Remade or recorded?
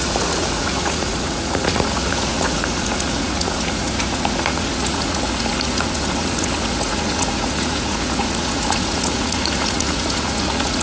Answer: remade